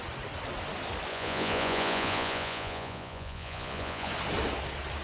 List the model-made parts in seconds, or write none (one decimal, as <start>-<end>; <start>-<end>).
1.1-4.1